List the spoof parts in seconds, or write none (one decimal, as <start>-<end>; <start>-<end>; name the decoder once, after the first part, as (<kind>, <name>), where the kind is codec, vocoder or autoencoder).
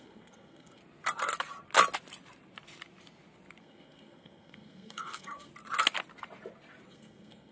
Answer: 0.0-0.8 (codec, SNAC); 3.6-5.5; 6.9-7.5